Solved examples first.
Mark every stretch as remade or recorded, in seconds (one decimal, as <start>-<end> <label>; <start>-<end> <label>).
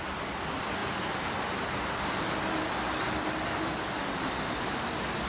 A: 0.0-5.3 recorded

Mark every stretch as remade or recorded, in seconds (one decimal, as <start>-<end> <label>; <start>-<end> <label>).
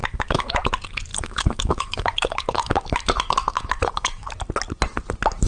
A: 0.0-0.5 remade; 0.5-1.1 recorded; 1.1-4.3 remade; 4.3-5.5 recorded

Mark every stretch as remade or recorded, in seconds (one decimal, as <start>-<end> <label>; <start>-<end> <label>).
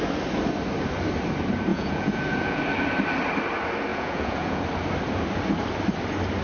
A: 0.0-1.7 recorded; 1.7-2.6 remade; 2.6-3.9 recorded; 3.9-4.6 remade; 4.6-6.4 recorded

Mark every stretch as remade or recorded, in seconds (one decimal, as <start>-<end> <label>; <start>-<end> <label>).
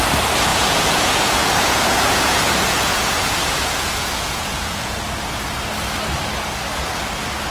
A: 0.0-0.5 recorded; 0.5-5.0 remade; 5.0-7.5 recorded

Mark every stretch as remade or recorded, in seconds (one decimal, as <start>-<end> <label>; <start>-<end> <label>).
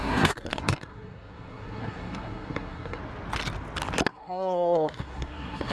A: 0.0-3.0 remade; 3.0-4.1 recorded; 4.1-5.7 remade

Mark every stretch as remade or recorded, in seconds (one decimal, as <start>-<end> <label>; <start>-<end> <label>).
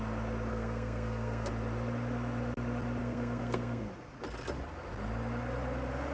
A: 0.0-0.5 recorded; 0.5-1.5 remade; 1.5-3.0 recorded; 3.0-3.9 remade; 3.9-6.1 recorded